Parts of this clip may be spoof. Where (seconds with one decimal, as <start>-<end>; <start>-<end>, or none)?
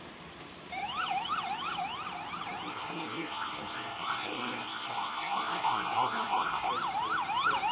2.7-6.7